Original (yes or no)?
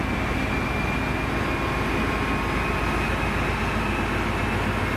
yes